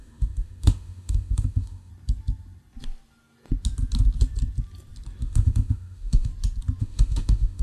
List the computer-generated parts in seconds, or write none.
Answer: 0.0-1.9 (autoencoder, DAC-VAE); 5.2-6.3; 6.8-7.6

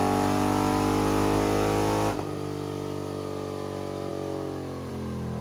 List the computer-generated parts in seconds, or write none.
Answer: none